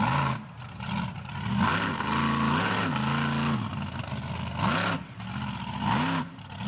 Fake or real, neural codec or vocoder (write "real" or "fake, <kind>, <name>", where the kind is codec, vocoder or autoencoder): real